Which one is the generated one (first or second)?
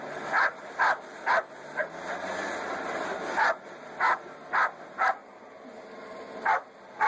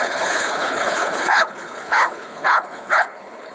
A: second